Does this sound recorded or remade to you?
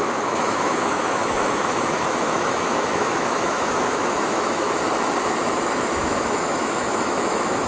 remade